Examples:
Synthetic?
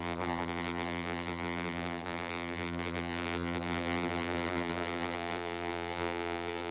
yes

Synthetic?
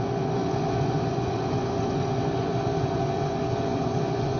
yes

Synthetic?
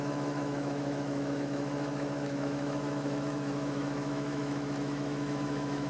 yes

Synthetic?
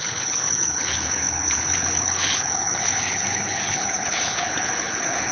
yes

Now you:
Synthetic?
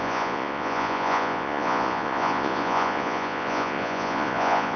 yes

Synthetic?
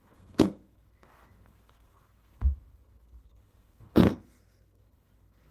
yes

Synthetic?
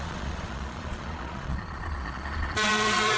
yes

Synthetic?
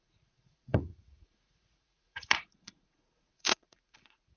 yes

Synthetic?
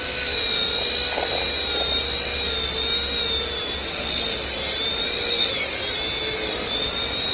no